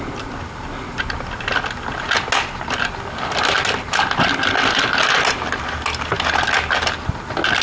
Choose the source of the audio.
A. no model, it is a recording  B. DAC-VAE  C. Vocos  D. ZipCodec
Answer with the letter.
A